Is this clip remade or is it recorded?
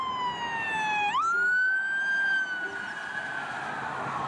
recorded